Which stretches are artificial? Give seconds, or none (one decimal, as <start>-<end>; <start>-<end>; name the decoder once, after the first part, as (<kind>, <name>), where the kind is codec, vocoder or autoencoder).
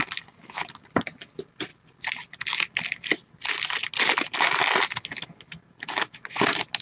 none